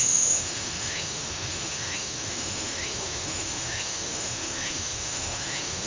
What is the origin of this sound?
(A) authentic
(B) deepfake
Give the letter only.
B